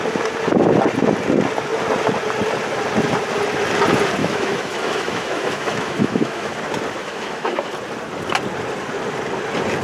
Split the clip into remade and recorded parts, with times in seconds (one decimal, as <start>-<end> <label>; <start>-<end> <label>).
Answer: 0.0-4.2 recorded; 4.2-6.6 remade; 6.6-7.0 recorded; 7.0-7.7 remade; 7.7-9.8 recorded